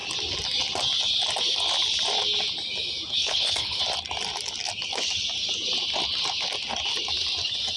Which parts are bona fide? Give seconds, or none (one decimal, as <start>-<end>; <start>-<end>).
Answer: 0.0-3.2; 3.8-7.8